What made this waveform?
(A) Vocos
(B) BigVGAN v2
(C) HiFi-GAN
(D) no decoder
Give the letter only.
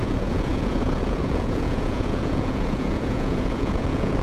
A